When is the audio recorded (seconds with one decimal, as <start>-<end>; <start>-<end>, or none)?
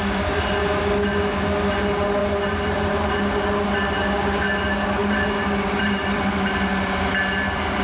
0.0-2.2; 3.1-5.0; 6.2-7.8